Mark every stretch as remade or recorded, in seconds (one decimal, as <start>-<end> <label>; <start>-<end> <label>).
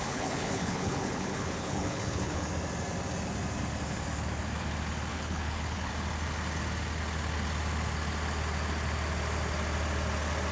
0.0-2.5 remade; 2.5-5.1 recorded; 5.1-5.9 remade; 5.9-10.5 recorded